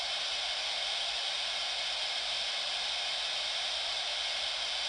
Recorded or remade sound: recorded